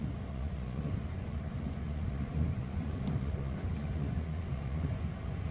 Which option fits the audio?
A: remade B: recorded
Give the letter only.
A